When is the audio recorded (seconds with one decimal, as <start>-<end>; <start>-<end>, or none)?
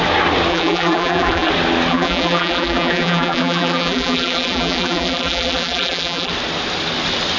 0.0-0.5; 1.5-1.9; 6.3-7.4